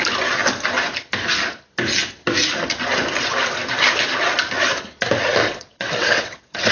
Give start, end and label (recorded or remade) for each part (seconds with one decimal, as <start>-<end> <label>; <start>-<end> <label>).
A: 0.0-5.4 recorded; 5.4-6.7 remade